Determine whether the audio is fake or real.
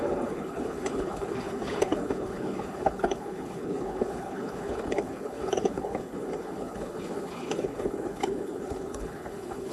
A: fake